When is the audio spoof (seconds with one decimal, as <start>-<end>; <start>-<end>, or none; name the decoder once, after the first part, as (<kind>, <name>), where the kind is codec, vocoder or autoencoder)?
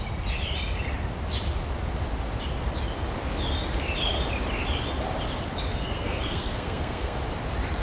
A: 5.7-7.2 (codec, SNAC)